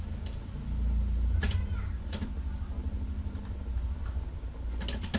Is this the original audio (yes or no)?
yes